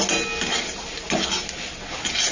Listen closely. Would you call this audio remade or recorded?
recorded